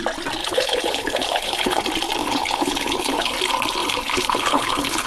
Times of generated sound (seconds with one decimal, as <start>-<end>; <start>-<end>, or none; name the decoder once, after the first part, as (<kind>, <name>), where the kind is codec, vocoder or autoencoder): 0.4-1.8 (codec, HILCodec); 2.2-3.3; 3.8-5.1